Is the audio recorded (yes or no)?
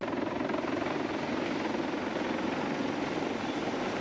yes